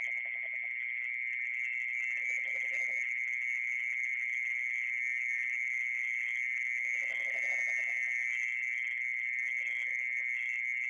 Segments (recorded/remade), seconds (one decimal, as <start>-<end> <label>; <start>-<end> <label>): 0.0-10.9 recorded